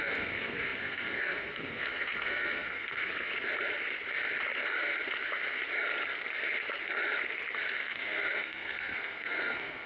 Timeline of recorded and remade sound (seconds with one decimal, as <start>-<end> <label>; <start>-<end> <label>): 0.0-3.3 remade; 3.3-7.8 recorded; 7.8-9.9 remade